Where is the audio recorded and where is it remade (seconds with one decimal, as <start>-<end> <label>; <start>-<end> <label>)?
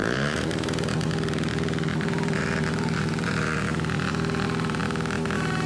0.0-4.8 remade; 4.8-5.7 recorded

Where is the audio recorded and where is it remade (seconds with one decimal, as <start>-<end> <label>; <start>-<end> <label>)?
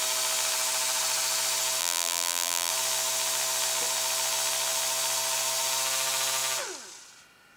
0.0-1.8 recorded; 1.8-2.7 remade; 2.7-7.6 recorded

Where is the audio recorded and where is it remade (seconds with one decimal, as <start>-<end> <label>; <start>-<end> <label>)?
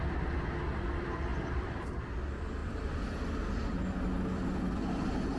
0.0-1.3 recorded; 1.3-2.0 remade; 2.0-2.6 recorded; 2.6-3.2 remade; 3.2-5.4 recorded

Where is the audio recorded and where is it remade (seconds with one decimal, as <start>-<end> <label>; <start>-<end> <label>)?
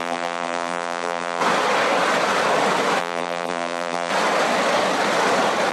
0.0-1.4 remade; 1.4-3.0 recorded; 3.0-4.1 remade; 4.1-5.7 recorded